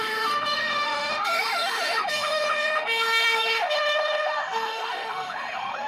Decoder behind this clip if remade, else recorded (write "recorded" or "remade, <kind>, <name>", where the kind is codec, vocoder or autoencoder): remade, autoencoder, DAC-VAE